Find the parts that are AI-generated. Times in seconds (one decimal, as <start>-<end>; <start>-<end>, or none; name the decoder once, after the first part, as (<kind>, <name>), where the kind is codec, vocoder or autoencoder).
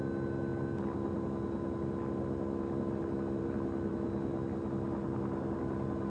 none